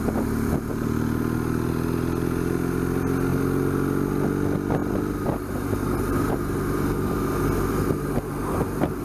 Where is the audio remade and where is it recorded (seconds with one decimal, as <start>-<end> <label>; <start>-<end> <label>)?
0.0-9.0 recorded